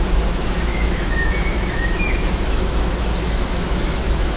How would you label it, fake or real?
fake